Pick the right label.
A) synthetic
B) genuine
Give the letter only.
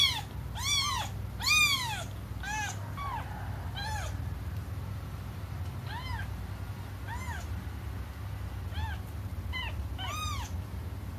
B